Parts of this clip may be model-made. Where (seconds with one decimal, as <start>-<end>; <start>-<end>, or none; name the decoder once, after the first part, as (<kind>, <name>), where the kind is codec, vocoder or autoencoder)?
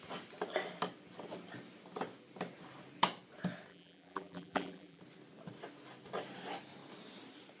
3.7-5.0 (vocoder, BigVGAN v2)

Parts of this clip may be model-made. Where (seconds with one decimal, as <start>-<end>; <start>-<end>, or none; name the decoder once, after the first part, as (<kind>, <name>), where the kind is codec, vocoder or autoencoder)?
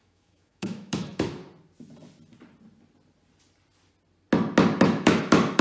0.0-1.4 (autoencoder, DAC-VAE); 4.8-5.6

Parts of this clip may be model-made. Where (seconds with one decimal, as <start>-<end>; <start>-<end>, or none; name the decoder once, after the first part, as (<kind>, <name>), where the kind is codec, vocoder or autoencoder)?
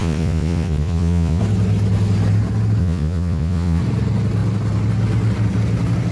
0.0-1.4 (vocoder, Vocos); 2.8-3.8